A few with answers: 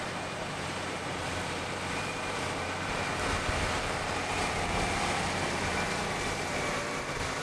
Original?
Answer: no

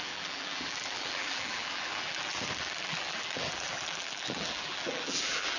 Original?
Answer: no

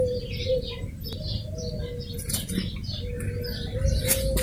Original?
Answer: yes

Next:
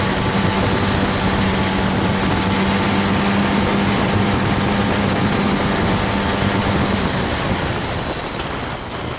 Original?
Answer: yes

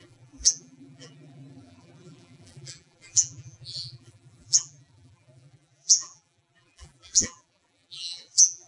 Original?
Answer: no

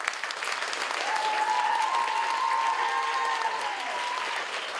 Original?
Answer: yes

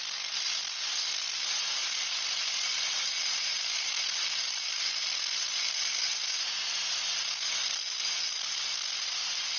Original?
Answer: yes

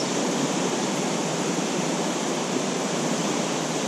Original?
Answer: no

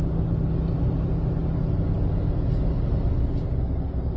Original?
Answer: yes